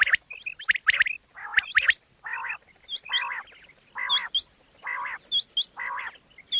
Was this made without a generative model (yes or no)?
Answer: yes